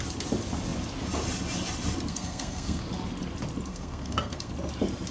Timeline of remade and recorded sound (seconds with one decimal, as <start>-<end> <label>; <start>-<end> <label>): 0.0-2.1 recorded; 2.1-2.8 remade; 2.8-3.7 recorded; 3.7-4.5 remade; 4.5-5.1 recorded